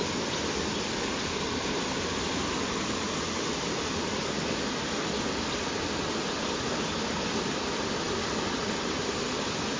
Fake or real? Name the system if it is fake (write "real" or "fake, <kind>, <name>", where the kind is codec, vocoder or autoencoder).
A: real